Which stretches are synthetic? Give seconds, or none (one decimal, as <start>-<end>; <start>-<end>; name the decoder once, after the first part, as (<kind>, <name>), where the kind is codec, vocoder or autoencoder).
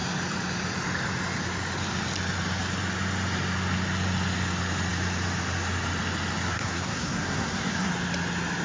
6.5-7.9 (codec, SNAC)